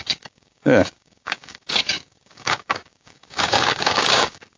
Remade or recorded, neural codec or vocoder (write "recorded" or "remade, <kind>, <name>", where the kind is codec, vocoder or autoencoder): remade, codec, DAC